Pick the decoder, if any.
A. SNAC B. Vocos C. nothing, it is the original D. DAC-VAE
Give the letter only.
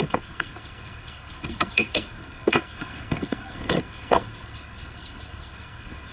A